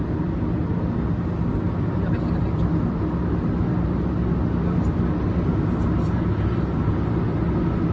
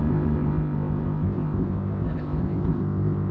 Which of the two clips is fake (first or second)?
second